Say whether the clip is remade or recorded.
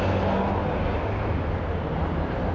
recorded